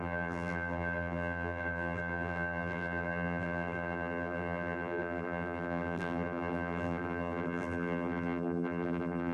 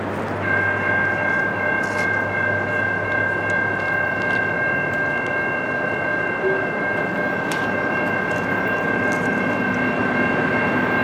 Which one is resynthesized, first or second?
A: first